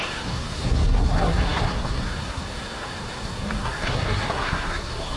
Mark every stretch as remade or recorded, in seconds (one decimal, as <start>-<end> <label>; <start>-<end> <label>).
0.0-5.2 remade